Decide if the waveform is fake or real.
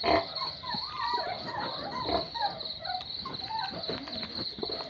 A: real